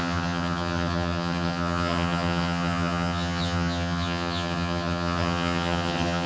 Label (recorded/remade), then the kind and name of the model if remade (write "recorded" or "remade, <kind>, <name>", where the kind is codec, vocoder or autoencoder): remade, vocoder, HiFi-GAN